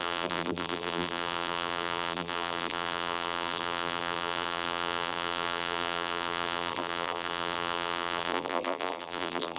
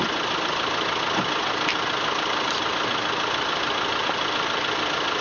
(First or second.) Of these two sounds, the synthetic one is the first